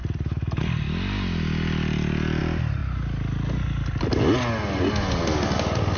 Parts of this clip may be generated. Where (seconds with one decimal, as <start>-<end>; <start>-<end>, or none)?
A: none